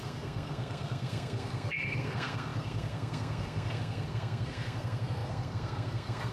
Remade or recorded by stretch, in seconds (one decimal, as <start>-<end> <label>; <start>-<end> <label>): 0.0-6.3 remade